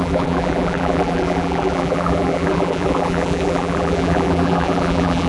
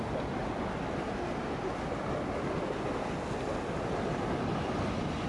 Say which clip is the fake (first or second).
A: first